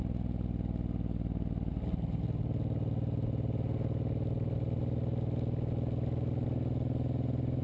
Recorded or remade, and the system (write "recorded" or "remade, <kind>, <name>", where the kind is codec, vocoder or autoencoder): recorded